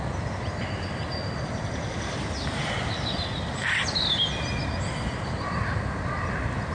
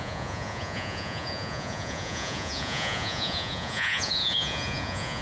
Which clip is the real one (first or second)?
first